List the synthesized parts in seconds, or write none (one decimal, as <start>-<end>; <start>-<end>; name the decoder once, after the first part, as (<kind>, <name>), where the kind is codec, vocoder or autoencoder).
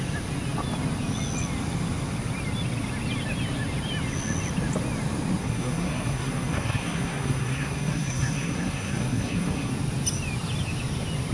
5.4-9.7 (codec, SNAC)